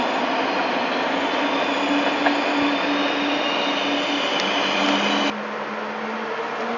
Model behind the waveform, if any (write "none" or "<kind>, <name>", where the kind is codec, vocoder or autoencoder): none